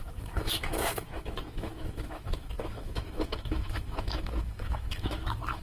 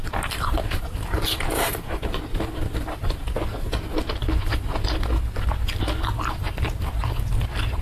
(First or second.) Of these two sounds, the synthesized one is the first